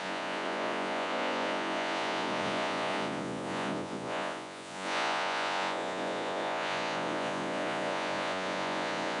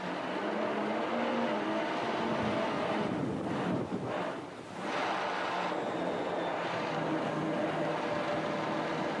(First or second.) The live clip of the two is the second